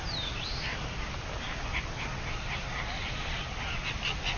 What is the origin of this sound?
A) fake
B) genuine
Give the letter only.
B